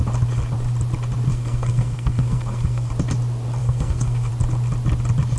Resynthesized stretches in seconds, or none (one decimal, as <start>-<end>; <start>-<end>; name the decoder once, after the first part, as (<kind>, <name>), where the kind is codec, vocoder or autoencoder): 1.3-2.9 (codec, SNAC); 3.6-4.3